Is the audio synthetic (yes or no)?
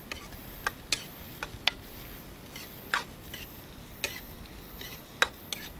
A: no